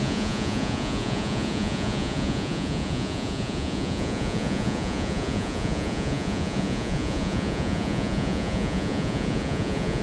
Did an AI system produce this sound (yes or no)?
yes